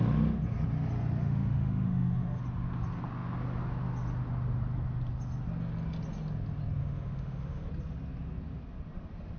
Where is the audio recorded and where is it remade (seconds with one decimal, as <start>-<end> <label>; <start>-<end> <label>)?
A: 0.0-1.2 recorded; 1.2-2.4 remade; 2.4-6.8 recorded; 6.8-7.7 remade; 7.7-9.4 recorded